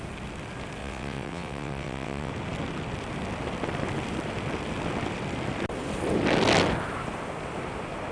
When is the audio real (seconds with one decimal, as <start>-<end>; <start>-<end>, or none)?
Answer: 0.0-0.8; 2.3-8.1